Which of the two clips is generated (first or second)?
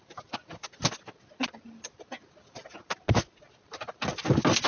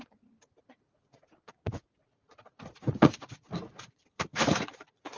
second